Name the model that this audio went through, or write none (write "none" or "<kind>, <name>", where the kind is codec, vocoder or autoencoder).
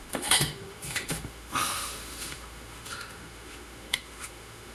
autoencoder, DAC-VAE